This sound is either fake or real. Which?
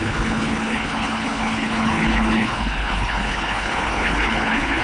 fake